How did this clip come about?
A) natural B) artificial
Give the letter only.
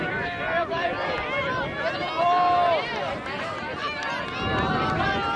A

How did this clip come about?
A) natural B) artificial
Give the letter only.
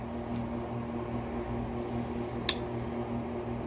A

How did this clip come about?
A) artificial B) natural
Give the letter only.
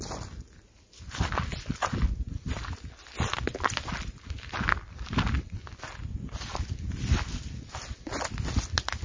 B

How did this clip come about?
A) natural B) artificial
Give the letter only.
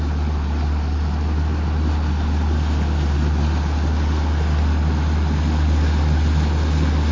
A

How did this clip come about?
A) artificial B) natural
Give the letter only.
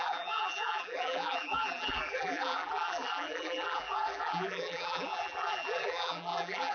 A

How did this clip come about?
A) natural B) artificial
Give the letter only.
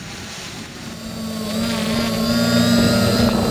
A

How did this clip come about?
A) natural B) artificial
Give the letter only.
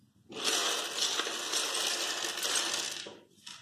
A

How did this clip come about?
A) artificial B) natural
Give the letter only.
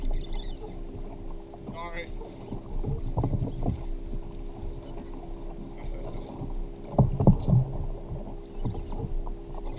B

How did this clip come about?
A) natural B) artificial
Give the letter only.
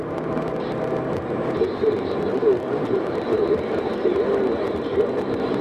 B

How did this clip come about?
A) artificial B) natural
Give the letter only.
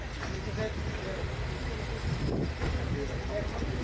B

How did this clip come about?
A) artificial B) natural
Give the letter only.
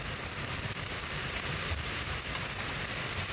A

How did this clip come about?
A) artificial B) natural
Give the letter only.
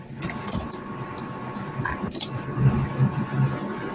A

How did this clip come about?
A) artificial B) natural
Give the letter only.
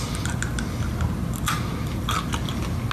B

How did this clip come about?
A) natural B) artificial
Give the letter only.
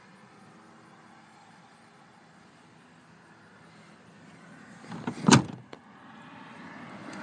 B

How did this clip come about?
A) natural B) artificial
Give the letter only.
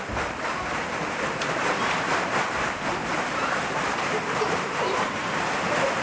B